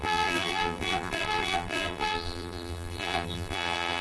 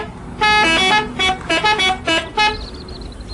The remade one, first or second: first